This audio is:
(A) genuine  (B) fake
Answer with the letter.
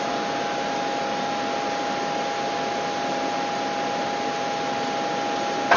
A